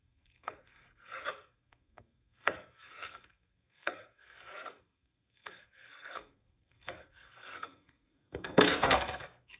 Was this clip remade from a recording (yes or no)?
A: yes